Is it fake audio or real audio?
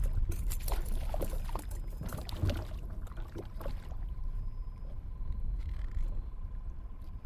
real